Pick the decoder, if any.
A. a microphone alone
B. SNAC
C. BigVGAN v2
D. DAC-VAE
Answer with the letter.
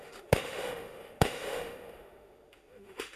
D